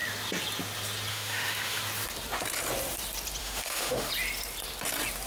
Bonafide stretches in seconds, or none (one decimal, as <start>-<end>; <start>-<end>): 0.0-1.1; 1.8-3.4; 4.1-5.3